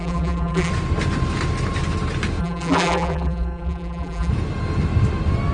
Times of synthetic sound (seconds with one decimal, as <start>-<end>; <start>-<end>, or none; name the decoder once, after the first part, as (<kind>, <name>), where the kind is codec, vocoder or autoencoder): 0.0-0.7 (vocoder, BigVGAN v2); 2.4-4.3